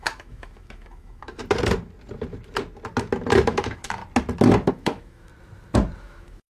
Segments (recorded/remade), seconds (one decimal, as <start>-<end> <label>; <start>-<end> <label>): 0.0-1.4 remade; 1.4-3.5 recorded; 3.5-4.0 remade; 4.0-4.7 recorded; 4.7-5.3 remade; 5.3-6.0 recorded; 6.0-6.6 remade